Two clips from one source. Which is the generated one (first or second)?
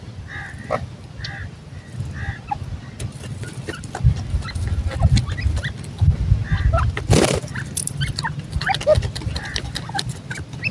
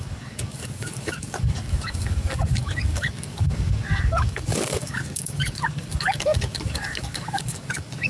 second